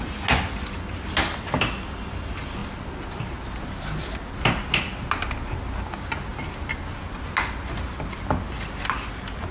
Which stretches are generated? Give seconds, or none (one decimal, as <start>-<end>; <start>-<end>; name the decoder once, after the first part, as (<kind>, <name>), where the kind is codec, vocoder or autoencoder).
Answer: none